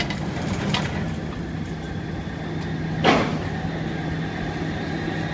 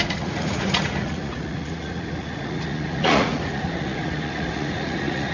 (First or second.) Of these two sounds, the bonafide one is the first